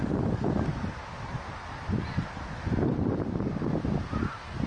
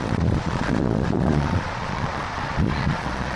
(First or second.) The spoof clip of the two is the second